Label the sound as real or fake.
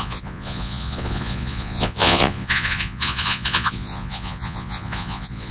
fake